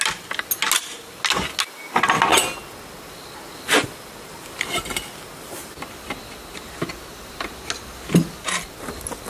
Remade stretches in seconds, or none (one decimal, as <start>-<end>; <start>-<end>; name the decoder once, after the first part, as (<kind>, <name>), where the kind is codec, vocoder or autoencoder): none